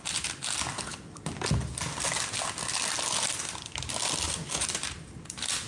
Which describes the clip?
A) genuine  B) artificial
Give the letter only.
A